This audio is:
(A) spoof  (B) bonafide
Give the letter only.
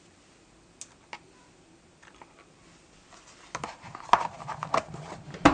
B